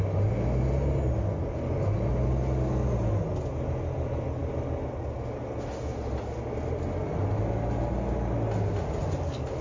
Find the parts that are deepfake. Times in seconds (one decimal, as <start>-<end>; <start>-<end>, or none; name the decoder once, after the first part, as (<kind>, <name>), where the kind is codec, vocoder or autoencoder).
none